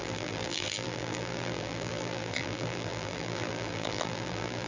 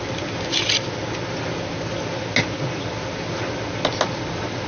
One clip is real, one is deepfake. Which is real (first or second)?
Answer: second